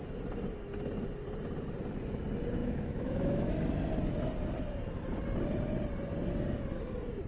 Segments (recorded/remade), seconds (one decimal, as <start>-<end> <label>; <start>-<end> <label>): 0.0-2.6 recorded; 2.6-3.5 remade; 3.5-7.3 recorded